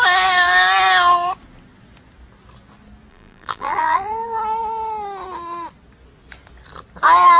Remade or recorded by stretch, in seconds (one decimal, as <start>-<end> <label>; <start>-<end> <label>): 0.0-3.1 recorded; 3.1-4.1 remade; 4.1-7.4 recorded